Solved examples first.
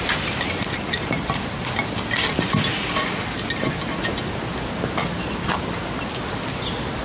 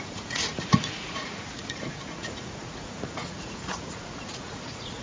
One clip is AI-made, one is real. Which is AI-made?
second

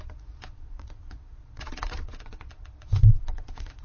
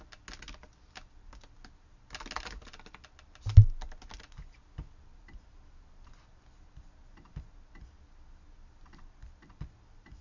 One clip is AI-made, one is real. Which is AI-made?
first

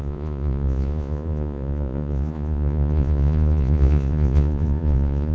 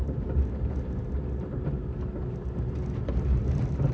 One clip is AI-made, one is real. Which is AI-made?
first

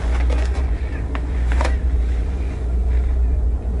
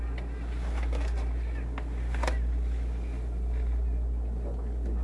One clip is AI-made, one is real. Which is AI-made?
first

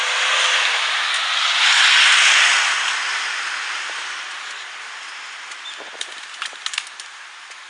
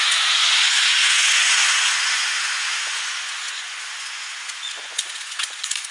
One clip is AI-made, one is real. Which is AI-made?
second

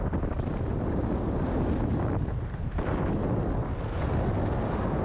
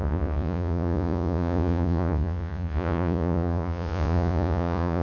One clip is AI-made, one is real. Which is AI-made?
second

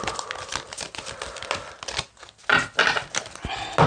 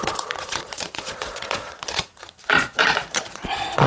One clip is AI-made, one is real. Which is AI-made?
second